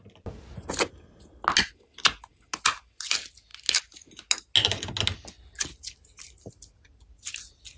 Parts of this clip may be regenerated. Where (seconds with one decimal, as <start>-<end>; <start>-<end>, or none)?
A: none

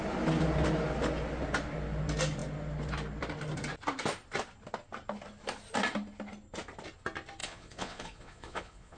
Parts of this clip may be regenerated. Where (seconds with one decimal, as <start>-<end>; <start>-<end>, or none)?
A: 7.4-9.0

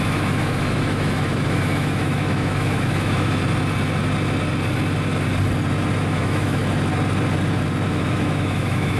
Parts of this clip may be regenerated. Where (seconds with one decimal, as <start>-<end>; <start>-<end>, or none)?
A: 0.0-3.4; 6.0-6.6; 7.9-9.0

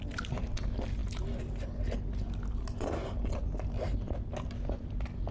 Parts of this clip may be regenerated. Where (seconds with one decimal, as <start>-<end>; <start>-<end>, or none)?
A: none

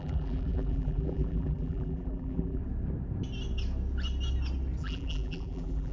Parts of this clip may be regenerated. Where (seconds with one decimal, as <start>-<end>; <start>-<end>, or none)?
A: 0.0-2.6; 4.8-5.9